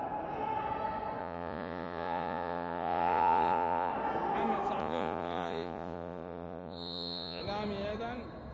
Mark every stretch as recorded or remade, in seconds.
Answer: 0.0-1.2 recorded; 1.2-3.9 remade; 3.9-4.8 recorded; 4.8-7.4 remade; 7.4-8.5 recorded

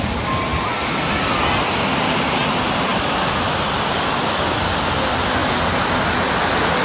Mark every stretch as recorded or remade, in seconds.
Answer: 0.0-6.8 recorded

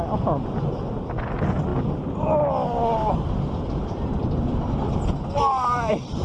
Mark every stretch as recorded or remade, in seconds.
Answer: 0.0-6.2 recorded

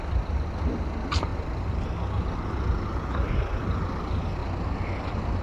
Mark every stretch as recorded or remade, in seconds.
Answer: 0.0-5.4 recorded

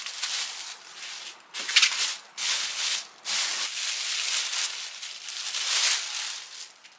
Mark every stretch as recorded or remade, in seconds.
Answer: 0.0-2.3 recorded; 2.3-3.0 remade; 3.0-7.0 recorded

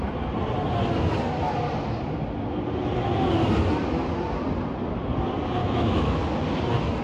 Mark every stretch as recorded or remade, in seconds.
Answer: 0.0-5.6 recorded; 5.6-6.2 remade; 6.2-7.0 recorded

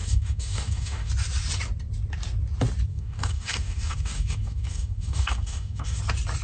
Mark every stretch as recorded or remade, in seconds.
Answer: 0.0-1.1 remade; 1.1-2.9 recorded; 2.9-6.0 remade; 6.0-6.4 recorded